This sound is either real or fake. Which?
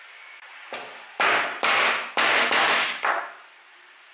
real